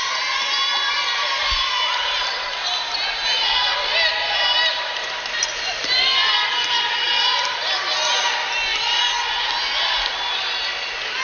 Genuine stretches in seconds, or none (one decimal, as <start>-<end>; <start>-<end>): 0.0-11.2